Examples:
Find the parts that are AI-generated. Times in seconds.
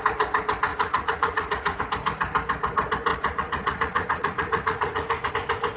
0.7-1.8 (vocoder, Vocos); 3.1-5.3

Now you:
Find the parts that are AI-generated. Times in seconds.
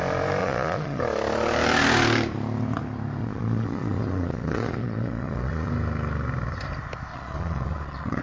0.4-1.0 (vocoder, Vocos); 3.2-5.7; 7.1-8.2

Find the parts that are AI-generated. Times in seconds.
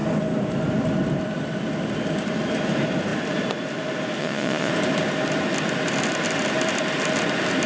4.2-4.7 (vocoder, Vocos)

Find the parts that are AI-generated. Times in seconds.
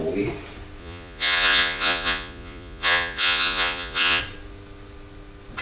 0.8-4.2 (vocoder, Vocos)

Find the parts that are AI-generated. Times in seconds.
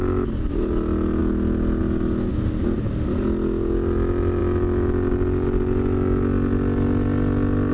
none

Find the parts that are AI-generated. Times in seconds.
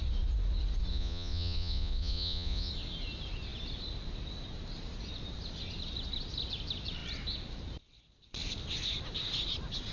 0.9-2.7 (vocoder, Vocos)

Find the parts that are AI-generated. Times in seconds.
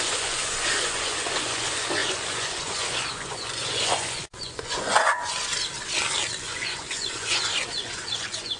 0.0-5.5 (vocoder, Vocos); 6.4-8.6